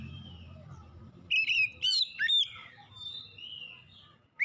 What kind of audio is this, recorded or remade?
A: remade